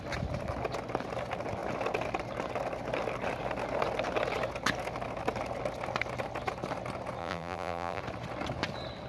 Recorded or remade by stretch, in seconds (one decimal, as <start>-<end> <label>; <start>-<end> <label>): 0.0-7.2 recorded; 7.2-8.0 remade; 8.0-9.1 recorded